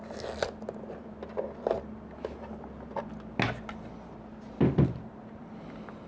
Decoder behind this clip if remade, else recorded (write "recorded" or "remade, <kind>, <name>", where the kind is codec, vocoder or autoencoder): recorded